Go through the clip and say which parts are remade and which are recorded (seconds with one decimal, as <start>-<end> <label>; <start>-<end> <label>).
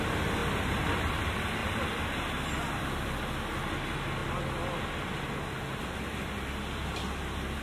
0.0-1.6 recorded; 1.6-3.2 remade; 3.2-7.6 recorded